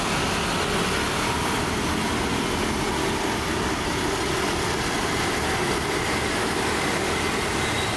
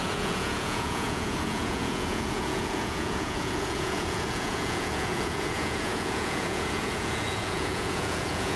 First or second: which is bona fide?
first